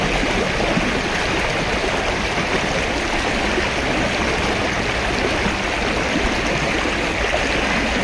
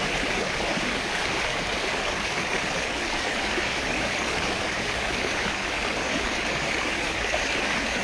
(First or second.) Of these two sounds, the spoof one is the second